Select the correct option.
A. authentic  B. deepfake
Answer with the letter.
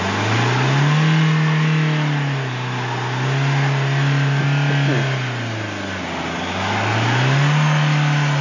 A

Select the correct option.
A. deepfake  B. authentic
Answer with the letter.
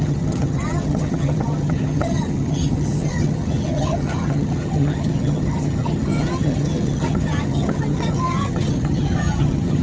A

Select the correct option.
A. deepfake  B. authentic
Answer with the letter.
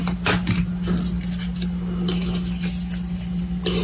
B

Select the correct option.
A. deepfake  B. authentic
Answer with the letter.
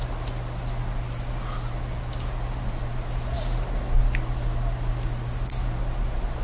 B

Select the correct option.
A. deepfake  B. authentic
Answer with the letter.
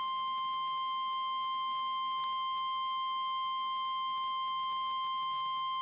B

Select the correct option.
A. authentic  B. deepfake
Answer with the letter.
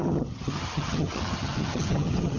B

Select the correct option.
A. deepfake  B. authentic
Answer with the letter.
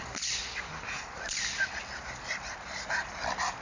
B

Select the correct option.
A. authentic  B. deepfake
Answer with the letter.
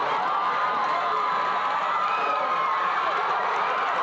A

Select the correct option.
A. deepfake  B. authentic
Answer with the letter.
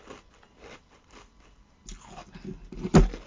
B